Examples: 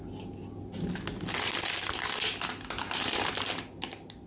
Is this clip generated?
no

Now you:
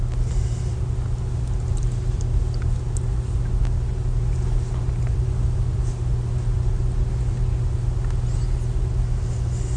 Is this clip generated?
no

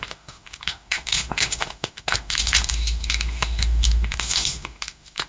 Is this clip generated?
yes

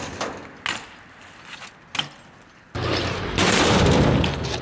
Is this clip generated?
no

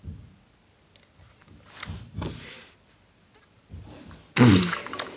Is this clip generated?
no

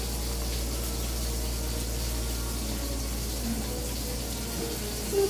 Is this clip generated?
no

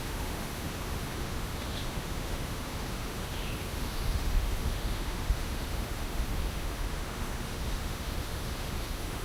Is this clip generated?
yes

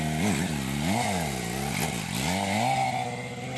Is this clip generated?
no